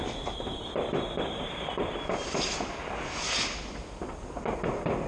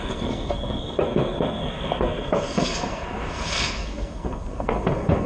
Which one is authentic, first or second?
first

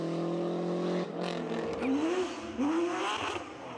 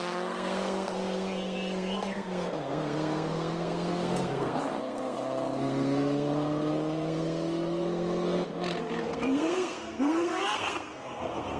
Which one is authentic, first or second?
first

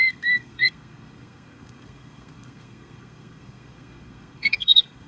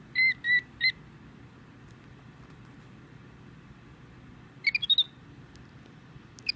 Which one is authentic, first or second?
second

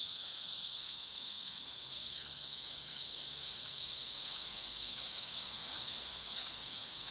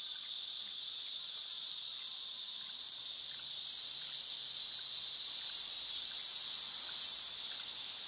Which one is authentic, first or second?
second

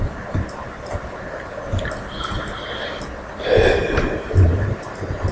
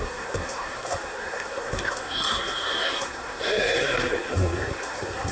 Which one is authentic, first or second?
first